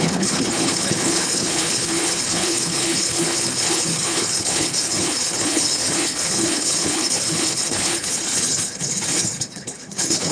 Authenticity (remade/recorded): remade